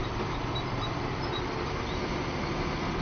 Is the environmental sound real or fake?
fake